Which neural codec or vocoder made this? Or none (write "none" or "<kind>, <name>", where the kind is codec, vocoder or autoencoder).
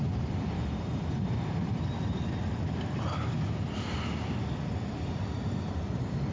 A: vocoder, BigVGAN v2